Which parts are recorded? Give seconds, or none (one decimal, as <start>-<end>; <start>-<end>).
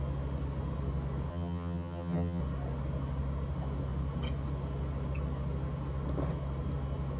0.0-1.3; 2.4-7.2